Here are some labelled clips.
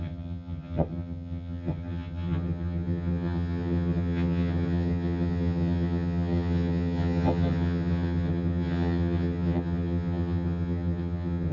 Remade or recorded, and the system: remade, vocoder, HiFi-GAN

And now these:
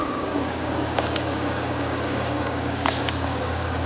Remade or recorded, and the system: remade, codec, DAC